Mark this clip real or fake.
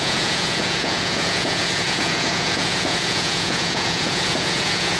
fake